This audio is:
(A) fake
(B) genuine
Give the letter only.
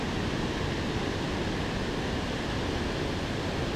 B